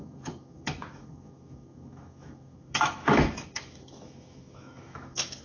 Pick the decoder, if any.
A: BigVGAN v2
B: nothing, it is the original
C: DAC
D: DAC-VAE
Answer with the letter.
D